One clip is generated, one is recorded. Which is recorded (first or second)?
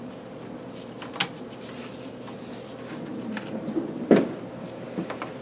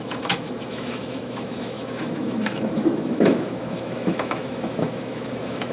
first